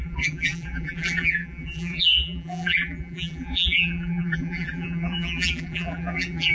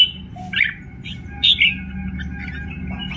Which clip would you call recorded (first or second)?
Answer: second